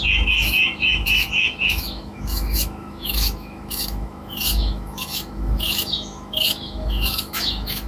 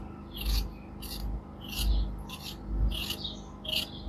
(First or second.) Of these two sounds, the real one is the second